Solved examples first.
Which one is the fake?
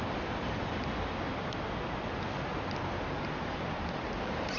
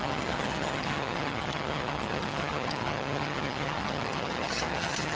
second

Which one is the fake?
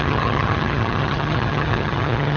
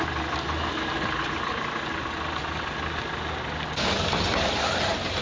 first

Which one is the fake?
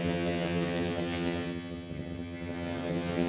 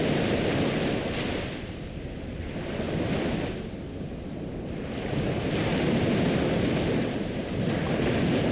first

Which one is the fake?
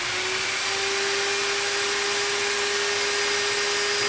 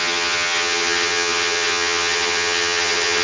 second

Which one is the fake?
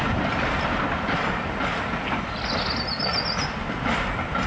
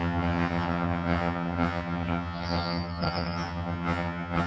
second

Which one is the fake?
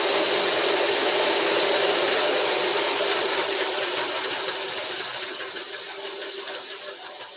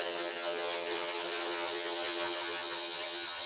second